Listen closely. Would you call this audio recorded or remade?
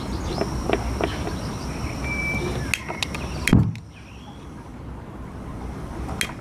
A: recorded